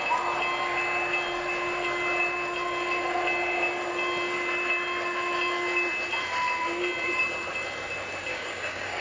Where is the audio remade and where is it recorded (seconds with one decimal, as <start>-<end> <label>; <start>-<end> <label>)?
0.0-8.3 recorded; 8.3-9.0 remade